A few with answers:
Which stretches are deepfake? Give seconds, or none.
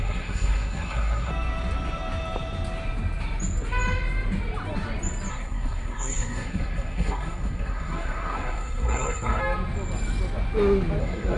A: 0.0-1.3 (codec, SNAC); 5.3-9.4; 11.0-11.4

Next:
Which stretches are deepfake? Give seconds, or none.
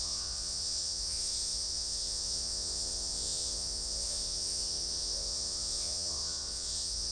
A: 0.0-7.1 (vocoder, Vocos)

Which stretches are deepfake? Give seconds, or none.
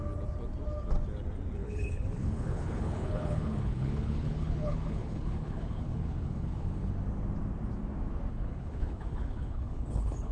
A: 1.6-6.9 (codec, HILCodec); 8.3-10.3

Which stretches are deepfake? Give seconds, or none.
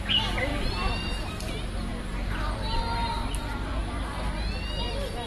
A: none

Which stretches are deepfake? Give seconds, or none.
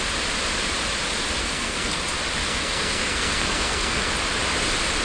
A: 1.4-2.0 (codec, SNAC); 2.4-4.1